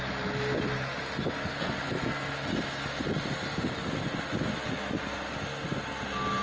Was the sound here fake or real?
real